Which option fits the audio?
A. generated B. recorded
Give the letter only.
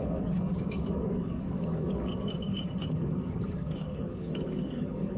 A